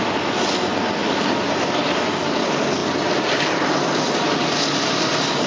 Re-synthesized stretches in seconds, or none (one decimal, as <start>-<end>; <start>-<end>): 1.0-1.5